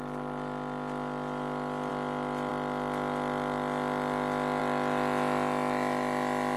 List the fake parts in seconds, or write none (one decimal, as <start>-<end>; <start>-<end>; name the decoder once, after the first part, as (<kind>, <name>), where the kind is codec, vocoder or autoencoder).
none